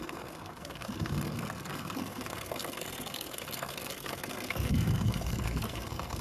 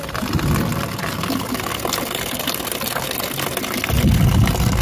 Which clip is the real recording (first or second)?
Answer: second